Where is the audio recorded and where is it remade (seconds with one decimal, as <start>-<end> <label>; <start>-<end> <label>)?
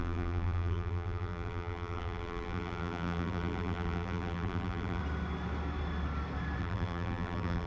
0.0-5.0 remade; 5.0-6.6 recorded; 6.6-7.7 remade